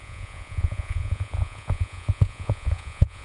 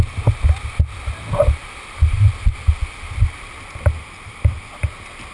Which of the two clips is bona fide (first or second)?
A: second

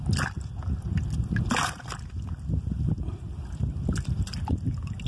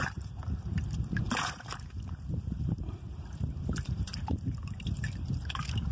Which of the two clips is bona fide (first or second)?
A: first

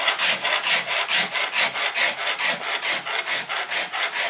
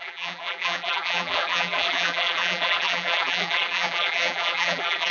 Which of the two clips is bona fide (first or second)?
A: first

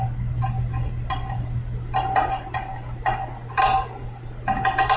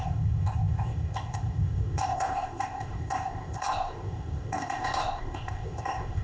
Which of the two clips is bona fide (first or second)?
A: first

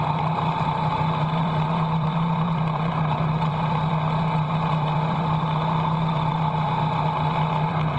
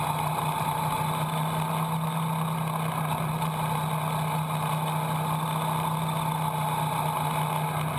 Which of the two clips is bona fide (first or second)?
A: second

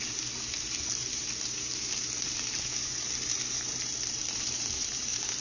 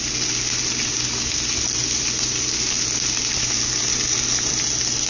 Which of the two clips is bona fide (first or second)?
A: second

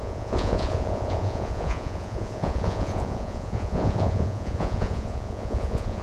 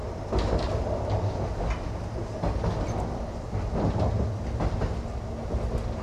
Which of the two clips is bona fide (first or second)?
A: second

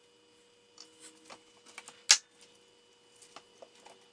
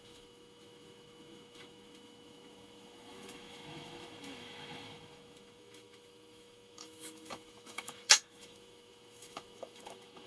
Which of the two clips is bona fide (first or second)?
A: first